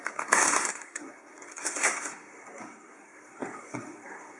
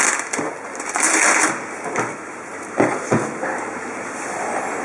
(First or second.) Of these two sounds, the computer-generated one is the first